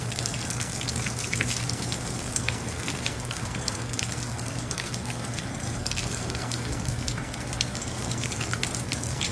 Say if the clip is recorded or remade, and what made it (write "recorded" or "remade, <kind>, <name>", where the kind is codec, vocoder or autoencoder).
remade, codec, SNAC